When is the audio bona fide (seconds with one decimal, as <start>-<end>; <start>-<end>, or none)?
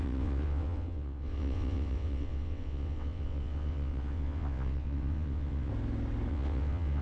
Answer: 5.7-6.3